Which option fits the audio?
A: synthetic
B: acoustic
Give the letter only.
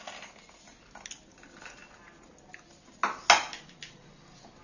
B